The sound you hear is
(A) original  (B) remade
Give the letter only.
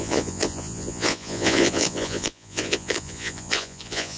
B